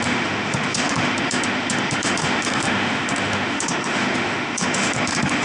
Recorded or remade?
remade